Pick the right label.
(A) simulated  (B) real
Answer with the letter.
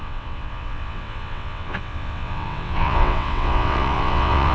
A